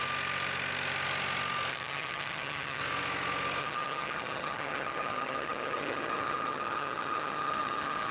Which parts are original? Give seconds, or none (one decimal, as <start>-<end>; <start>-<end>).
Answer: 0.0-1.7; 2.8-3.6